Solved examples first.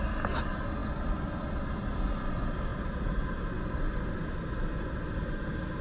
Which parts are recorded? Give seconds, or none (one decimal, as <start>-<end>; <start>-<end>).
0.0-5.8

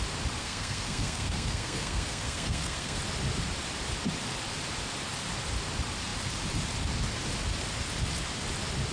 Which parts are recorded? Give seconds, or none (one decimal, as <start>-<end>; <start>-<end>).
0.0-0.4; 3.0-8.9

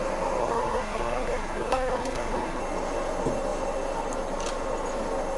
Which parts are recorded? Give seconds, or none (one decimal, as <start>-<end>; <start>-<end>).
0.0-0.4; 2.6-5.4

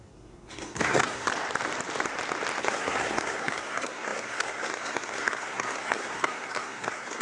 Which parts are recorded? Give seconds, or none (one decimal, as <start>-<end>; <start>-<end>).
1.3-2.6

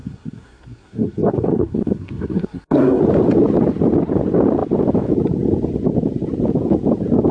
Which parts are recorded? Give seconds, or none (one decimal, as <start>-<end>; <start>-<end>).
3.0-7.3

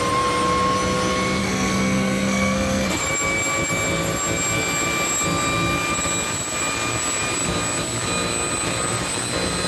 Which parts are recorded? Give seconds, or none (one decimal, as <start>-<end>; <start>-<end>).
0.0-1.4; 3.0-9.7